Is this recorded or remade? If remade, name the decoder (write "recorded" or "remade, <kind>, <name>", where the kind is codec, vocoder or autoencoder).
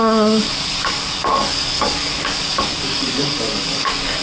remade, codec, DAC